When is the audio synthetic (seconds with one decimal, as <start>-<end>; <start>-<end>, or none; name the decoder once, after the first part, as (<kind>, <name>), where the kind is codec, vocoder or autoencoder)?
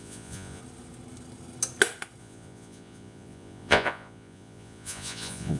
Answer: 0.0-0.6 (vocoder, Vocos); 2.2-5.6